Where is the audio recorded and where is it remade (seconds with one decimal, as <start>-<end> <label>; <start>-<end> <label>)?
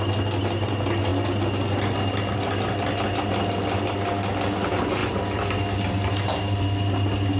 0.0-7.4 recorded